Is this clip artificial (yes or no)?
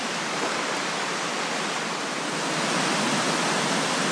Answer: no